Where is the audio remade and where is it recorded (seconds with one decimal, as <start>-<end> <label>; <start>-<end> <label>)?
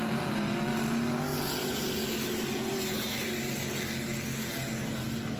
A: 0.0-5.4 recorded